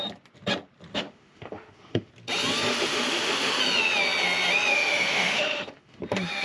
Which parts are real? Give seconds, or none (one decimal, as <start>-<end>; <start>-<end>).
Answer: 0.0-0.9; 2.1-2.7; 3.6-4.7; 6.0-6.4